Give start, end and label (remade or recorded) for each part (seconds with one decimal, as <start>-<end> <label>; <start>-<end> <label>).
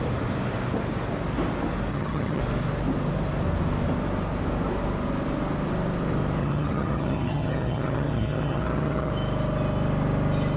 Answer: 0.0-1.9 recorded; 1.9-2.4 remade; 2.4-6.4 recorded; 6.4-9.1 remade; 9.1-10.6 recorded